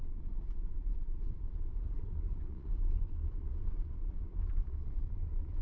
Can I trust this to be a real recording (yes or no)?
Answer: no